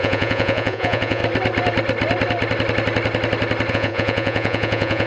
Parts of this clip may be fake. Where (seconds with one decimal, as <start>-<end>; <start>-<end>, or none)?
0.0-1.2; 3.7-5.1